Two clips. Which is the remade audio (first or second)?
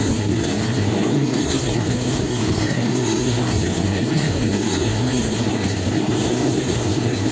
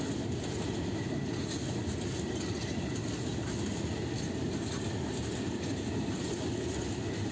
first